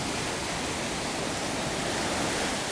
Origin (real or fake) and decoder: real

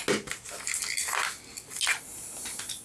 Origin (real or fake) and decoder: real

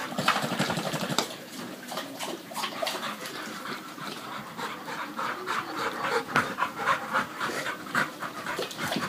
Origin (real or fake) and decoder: fake, vocoder, BigVGAN v2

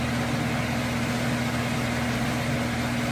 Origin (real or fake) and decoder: real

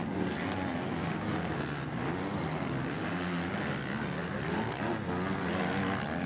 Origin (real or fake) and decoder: real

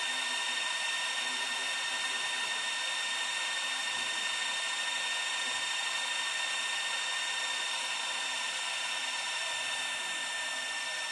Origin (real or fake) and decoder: real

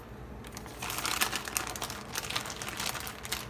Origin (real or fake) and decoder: real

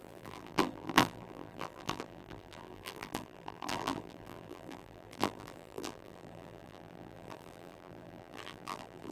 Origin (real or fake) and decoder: fake, vocoder, BigVGAN v2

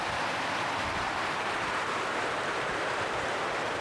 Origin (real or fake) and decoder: fake, vocoder, BigVGAN v2